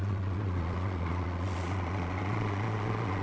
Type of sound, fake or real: fake